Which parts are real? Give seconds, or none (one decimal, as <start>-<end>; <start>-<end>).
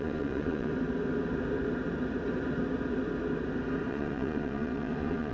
0.7-3.9